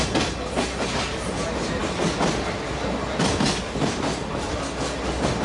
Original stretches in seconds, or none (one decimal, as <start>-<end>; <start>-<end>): 0.0-5.4

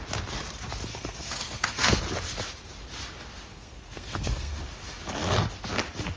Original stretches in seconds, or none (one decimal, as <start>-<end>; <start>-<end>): 0.0-0.9; 2.0-3.5; 4.6-6.2